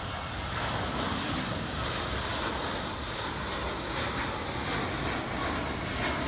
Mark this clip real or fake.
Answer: real